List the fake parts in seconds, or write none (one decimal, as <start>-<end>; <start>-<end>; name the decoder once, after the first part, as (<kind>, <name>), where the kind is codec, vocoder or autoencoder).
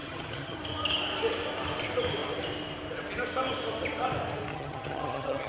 0.0-0.6 (vocoder, HiFi-GAN); 4.5-5.5